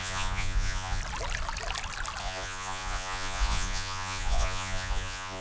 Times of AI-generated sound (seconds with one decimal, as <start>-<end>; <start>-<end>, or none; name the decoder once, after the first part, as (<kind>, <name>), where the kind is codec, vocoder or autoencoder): 0.0-1.0 (vocoder, Vocos); 2.2-5.4